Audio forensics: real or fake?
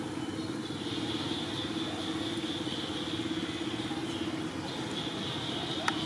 real